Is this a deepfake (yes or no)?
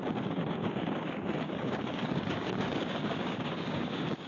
yes